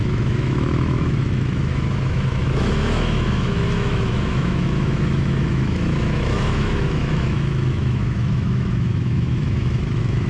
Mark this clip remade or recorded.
remade